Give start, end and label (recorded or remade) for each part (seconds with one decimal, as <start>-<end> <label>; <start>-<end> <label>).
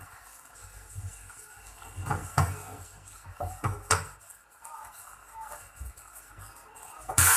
0.0-7.4 remade